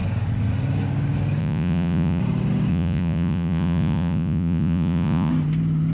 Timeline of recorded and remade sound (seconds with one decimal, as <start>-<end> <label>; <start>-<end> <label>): 0.0-1.4 recorded; 1.4-2.2 remade; 2.2-2.7 recorded; 2.7-5.3 remade; 5.3-5.9 recorded